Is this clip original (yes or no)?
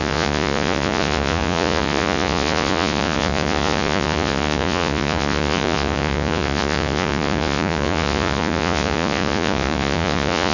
no